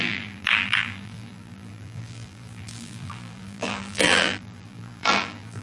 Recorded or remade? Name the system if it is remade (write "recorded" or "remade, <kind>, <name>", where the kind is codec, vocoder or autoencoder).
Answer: remade, vocoder, BigVGAN v2